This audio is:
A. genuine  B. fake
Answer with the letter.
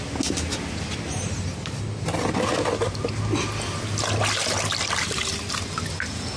A